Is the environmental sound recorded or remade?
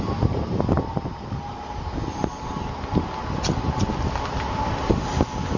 recorded